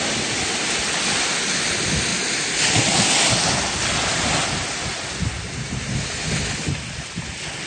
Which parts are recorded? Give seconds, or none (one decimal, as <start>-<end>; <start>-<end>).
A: 0.0-7.7